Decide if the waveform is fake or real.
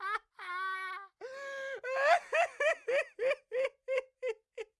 real